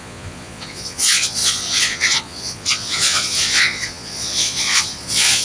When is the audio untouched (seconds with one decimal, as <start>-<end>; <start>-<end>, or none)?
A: none